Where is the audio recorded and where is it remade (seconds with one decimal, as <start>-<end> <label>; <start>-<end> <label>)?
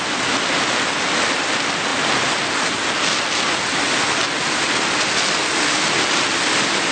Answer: 0.0-6.9 recorded